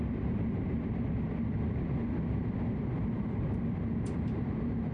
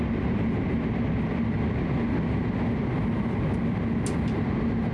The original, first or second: second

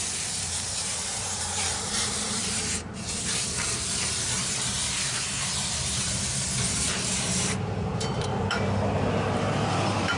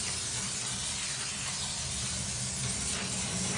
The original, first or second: second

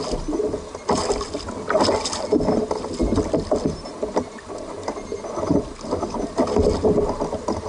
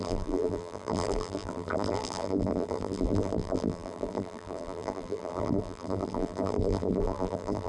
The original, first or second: first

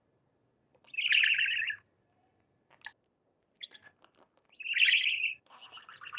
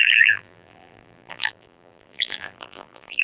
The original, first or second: first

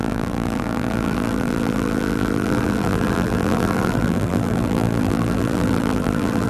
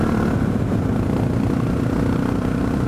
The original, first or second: second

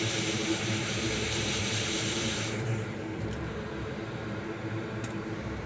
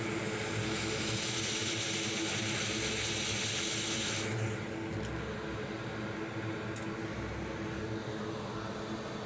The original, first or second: second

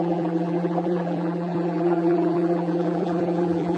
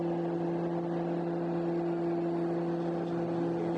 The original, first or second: second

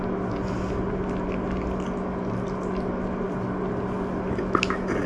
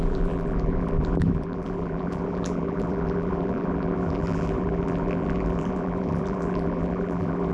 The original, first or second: first